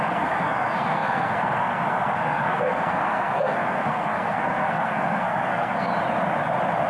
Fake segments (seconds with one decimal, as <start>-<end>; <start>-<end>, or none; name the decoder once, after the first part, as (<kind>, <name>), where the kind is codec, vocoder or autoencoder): 0.0-5.9 (codec, SNAC)